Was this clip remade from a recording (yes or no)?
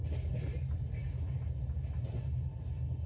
no